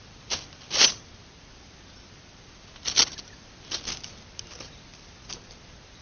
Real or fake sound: real